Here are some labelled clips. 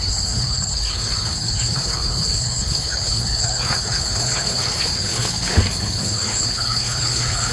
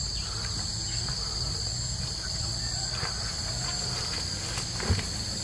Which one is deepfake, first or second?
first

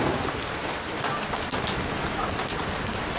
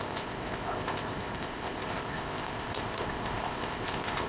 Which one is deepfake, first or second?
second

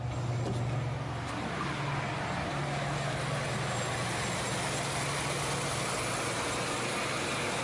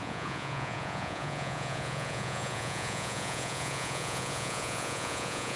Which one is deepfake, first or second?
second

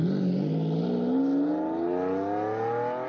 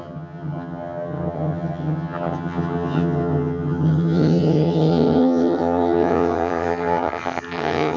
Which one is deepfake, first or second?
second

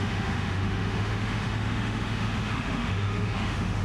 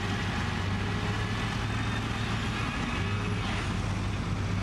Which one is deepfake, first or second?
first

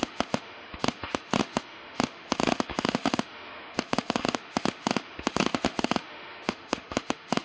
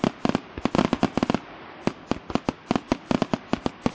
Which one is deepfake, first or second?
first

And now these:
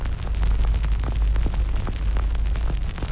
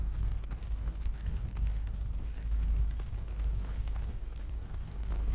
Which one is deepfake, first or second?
second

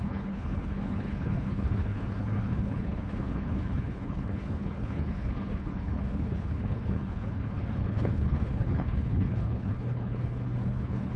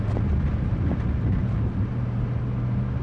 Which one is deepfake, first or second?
first